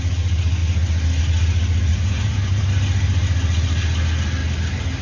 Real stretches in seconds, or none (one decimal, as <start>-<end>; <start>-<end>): 0.0-1.9; 2.6-5.0